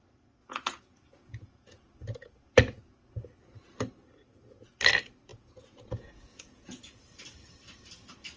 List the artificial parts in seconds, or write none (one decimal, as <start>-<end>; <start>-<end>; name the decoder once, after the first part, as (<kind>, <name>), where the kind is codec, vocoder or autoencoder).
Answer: 0.4-1.9 (vocoder, Vocos); 5.3-7.0